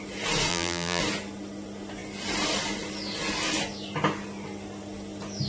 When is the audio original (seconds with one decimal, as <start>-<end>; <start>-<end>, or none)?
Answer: 0.0-0.5; 1.0-5.5